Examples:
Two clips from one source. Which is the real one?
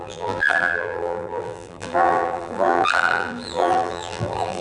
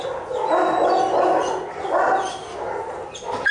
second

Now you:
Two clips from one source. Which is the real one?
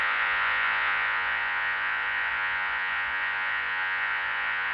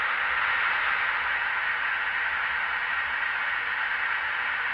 second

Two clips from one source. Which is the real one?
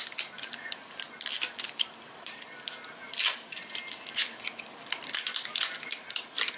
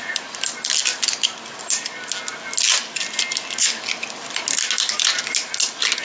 second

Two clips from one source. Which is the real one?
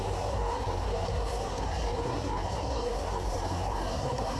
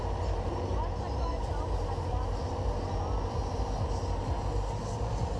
second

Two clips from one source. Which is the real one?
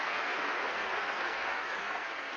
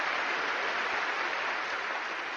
second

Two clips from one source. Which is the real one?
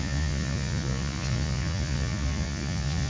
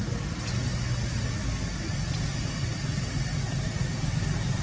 second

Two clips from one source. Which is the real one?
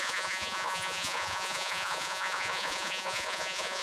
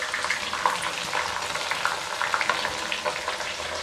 second